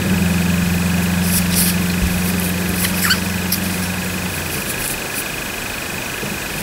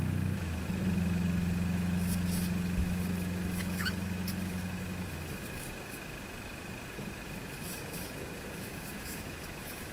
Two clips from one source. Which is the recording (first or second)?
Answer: first